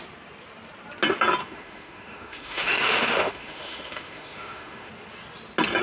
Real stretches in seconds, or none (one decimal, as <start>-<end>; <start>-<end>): 0.0-1.4; 4.9-5.8